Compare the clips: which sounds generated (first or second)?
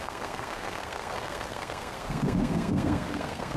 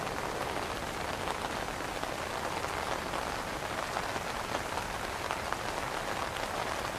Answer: first